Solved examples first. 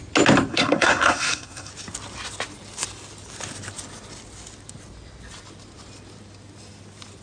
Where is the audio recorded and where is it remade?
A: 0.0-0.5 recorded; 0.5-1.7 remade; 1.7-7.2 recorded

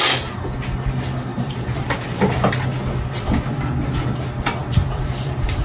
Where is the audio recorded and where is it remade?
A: 0.0-1.3 recorded; 1.3-2.5 remade; 2.5-4.6 recorded; 4.6-5.6 remade

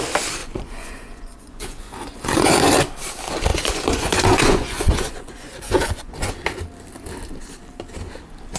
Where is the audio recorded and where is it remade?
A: 0.0-0.4 recorded; 0.4-2.5 remade; 2.5-3.5 recorded; 3.5-6.3 remade; 6.3-8.6 recorded

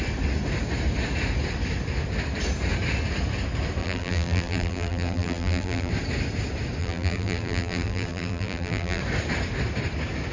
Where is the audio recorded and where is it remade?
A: 0.0-3.8 recorded; 3.8-5.9 remade; 5.9-6.8 recorded; 6.8-9.0 remade; 9.0-10.3 recorded

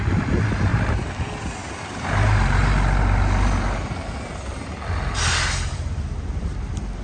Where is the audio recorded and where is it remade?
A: 0.0-0.7 remade; 0.7-1.8 recorded; 1.8-2.6 remade; 2.6-4.5 recorded; 4.5-7.0 remade

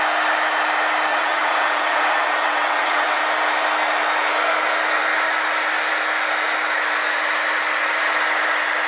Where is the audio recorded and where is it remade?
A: 0.0-1.1 recorded; 1.1-3.2 remade; 3.2-8.9 recorded